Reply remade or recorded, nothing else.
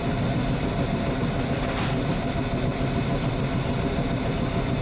recorded